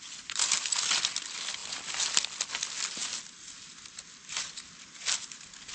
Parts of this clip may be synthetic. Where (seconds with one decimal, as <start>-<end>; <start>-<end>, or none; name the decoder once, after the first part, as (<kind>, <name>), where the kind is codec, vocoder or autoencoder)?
none